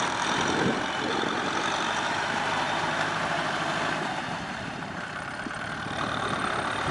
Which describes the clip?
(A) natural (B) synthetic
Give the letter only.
B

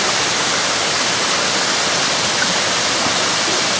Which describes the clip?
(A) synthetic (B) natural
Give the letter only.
B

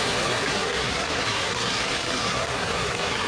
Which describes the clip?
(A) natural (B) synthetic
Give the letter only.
B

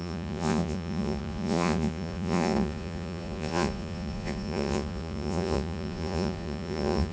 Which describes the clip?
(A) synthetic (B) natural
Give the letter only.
A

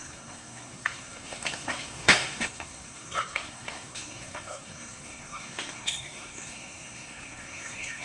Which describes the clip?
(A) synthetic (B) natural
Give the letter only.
A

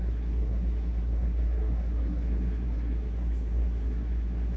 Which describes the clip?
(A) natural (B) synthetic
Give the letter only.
B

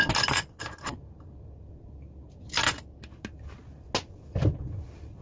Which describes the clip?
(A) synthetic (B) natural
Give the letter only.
B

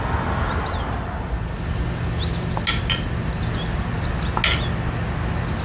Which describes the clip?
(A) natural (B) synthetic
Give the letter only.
A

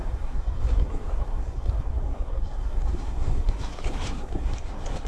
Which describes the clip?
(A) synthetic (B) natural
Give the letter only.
A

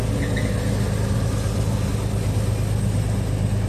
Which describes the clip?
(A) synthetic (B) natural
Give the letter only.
B